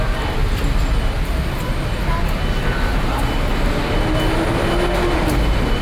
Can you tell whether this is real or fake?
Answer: real